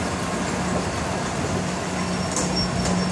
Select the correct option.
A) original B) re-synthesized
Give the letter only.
A